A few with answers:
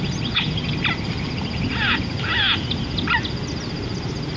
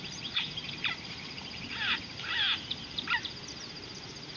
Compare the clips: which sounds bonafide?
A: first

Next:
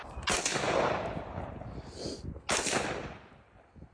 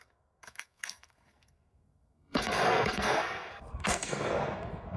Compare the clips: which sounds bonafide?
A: first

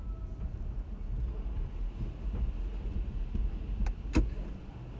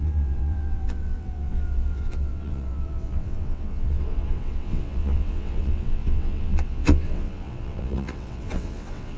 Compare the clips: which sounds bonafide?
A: first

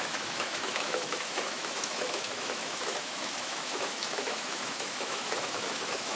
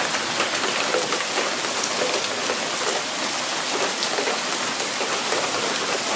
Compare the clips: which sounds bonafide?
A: second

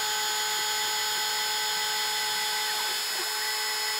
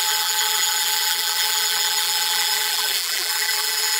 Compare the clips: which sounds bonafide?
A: first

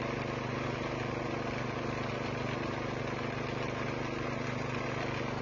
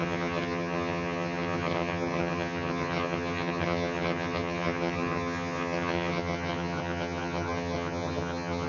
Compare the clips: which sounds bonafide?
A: first